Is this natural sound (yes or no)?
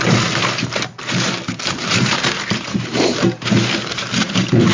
no